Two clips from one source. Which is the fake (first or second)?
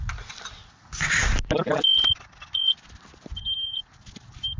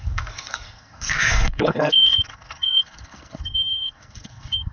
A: second